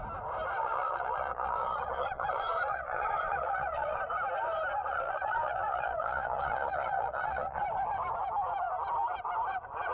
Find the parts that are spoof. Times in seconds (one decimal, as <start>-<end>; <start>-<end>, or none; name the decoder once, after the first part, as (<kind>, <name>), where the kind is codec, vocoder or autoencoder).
0.6-4.0 (vocoder, Vocos); 4.8-7.6